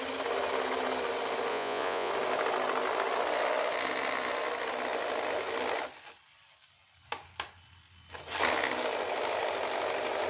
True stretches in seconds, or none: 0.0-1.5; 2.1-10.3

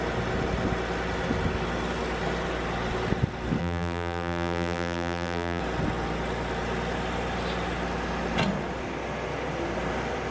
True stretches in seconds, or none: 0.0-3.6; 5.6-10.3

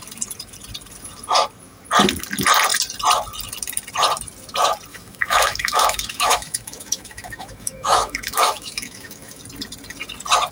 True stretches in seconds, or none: 0.0-4.9; 9.4-10.5

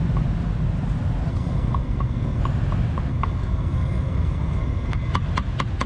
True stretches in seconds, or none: 0.0-1.3; 2.4-3.1; 5.1-5.9